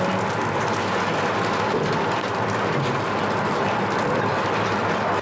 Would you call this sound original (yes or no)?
yes